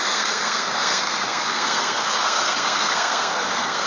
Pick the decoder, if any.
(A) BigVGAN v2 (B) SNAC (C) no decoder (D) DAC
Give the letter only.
B